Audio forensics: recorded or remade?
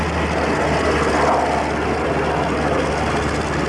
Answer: recorded